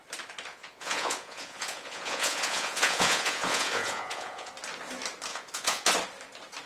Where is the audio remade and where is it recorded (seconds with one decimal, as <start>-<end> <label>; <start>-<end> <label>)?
0.0-0.5 recorded; 0.5-4.5 remade; 4.5-5.3 recorded; 5.3-5.9 remade; 5.9-6.7 recorded